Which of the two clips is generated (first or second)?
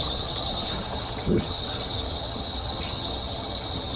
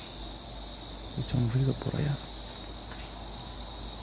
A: first